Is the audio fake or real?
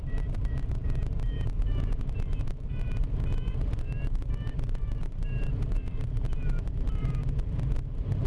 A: fake